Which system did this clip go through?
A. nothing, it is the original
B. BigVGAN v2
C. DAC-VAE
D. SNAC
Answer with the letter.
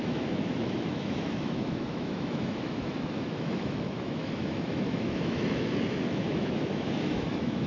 C